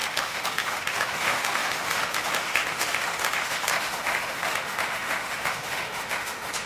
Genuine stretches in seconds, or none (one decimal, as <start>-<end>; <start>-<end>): none